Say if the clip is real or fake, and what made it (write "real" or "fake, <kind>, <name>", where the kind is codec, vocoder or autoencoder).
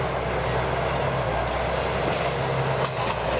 real